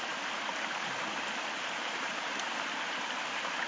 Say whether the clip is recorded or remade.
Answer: recorded